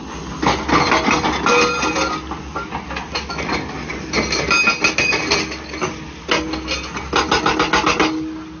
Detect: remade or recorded recorded